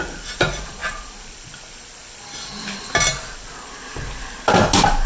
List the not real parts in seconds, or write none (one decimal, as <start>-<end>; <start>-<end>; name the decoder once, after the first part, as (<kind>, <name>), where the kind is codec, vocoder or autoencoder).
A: none